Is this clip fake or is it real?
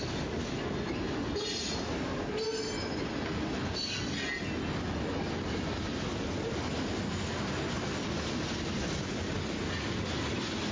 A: real